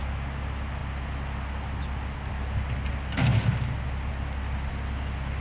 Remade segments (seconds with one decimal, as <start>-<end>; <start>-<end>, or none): none